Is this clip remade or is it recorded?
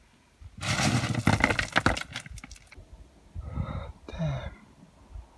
recorded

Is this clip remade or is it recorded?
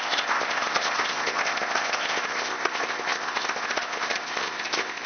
remade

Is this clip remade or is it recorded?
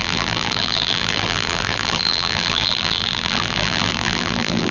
remade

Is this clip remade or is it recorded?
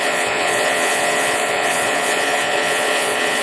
remade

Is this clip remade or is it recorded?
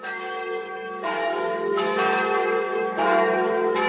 remade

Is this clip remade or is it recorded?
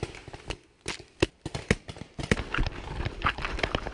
recorded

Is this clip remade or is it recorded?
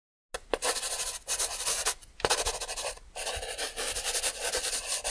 recorded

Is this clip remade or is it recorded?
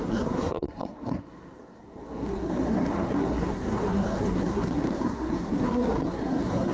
remade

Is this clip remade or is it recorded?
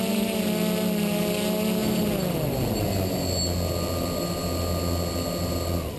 recorded